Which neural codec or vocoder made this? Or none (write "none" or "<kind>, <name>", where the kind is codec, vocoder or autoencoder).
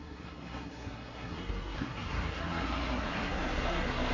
codec, SNAC